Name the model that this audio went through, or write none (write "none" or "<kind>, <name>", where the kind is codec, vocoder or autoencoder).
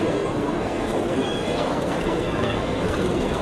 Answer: codec, SNAC